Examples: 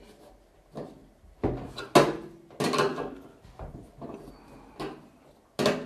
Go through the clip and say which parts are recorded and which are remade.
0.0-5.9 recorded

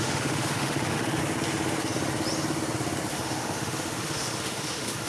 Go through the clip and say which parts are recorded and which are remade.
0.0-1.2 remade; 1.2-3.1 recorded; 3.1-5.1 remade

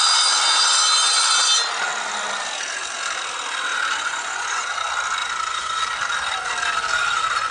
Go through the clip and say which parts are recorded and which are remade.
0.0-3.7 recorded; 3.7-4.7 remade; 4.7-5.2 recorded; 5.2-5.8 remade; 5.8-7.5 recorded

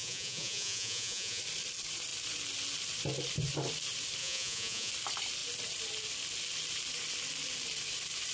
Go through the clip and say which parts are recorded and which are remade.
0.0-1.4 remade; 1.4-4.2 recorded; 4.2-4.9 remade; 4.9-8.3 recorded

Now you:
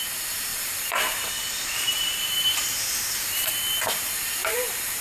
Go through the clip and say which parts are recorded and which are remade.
0.0-0.5 recorded; 0.5-3.5 remade; 3.5-4.4 recorded; 4.4-5.0 remade

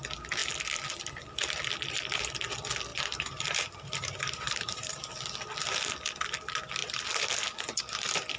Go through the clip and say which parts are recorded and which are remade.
0.0-2.9 recorded; 2.9-5.1 remade; 5.1-8.4 recorded

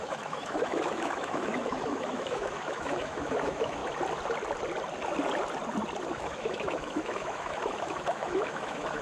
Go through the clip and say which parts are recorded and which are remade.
0.0-3.8 remade; 3.8-6.1 recorded; 6.1-9.0 remade

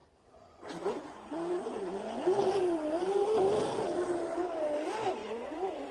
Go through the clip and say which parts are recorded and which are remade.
0.0-2.6 remade; 2.6-5.2 recorded; 5.2-5.9 remade